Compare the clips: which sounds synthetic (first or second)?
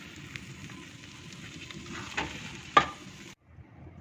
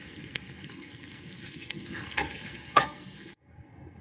second